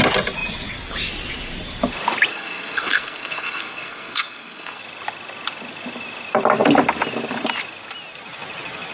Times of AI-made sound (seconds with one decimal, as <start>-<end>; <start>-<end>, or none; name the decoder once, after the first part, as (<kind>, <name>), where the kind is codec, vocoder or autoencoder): 2.3-4.8 (codec, SNAC)